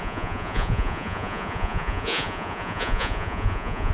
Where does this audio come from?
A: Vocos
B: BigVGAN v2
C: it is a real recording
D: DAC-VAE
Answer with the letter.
A